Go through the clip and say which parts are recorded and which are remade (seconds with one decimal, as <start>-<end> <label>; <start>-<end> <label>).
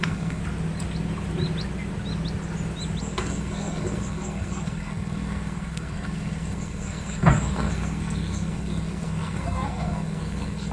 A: 0.0-0.4 remade; 0.4-3.0 recorded; 3.0-10.7 remade